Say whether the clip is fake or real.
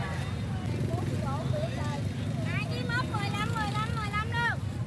real